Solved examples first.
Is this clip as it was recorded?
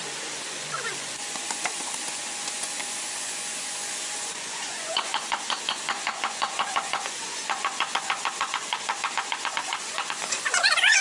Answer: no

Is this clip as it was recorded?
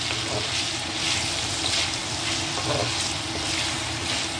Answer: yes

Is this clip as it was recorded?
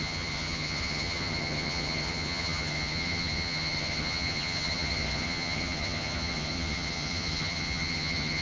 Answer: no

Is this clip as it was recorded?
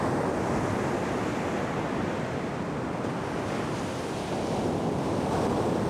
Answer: yes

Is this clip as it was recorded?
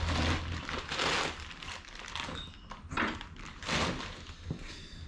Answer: yes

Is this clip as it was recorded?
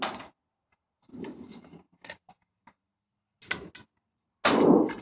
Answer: yes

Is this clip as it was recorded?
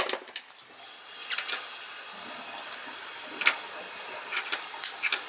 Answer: yes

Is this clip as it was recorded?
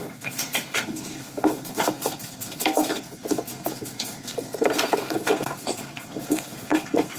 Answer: no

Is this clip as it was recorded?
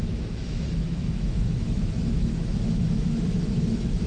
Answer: no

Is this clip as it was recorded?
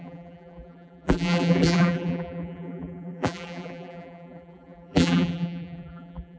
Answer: no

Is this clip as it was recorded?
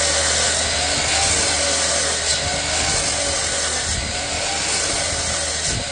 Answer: yes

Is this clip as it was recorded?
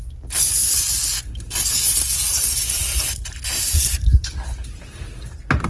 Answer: yes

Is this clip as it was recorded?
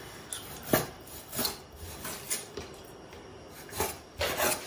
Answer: yes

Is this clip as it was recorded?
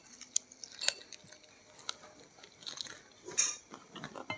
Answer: yes